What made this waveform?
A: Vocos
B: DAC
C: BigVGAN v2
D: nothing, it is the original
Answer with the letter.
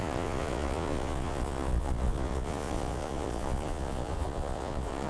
A